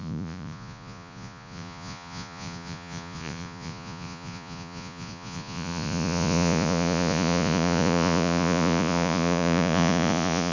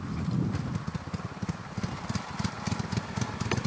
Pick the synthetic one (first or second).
first